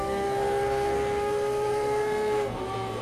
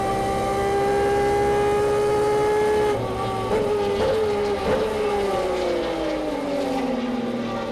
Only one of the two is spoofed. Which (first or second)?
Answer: first